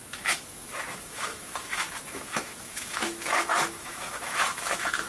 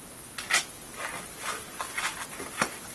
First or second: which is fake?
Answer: first